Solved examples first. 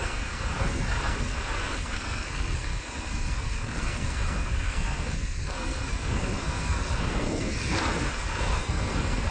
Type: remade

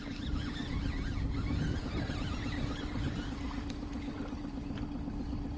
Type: recorded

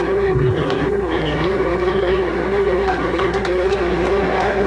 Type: remade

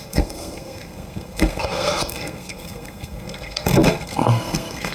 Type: remade